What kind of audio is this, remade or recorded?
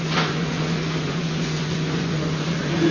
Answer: remade